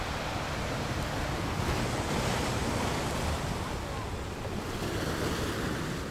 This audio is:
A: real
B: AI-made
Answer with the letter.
A